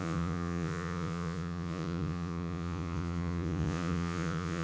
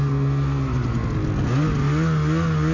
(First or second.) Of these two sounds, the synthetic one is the first